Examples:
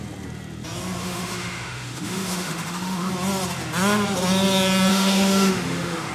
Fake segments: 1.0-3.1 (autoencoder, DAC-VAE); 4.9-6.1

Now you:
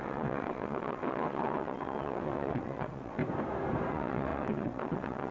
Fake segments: 0.0-3.2 (vocoder, WaveNeXt); 3.9-5.3

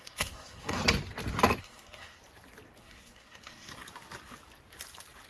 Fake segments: 0.0-0.8 (codec, SNAC); 1.6-2.2; 2.8-3.7